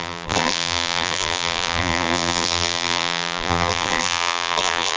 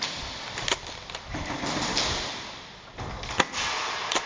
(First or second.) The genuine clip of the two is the second